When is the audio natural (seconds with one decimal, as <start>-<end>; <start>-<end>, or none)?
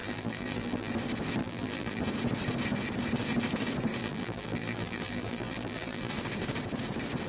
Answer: 0.9-1.4; 2.0-4.0; 6.1-7.3